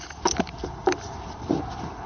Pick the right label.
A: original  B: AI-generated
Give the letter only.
A